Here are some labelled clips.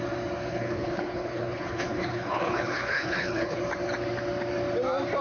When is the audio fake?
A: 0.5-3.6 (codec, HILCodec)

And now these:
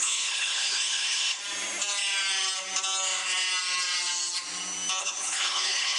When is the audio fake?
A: 0.0-1.4 (codec, HILCodec); 5.0-6.0

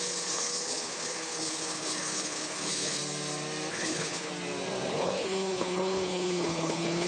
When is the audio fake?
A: 0.0-3.0 (codec, HILCodec); 3.7-4.3; 4.9-7.1

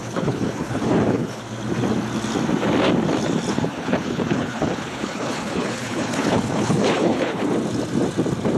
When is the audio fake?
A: 0.0-1.4 (codec, HILCodec); 3.5-7.4